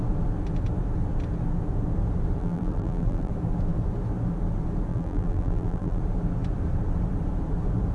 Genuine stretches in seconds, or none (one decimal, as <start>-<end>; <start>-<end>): 0.0-2.4; 3.3-4.9; 6.0-7.9